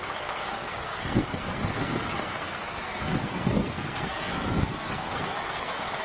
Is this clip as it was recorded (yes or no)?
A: no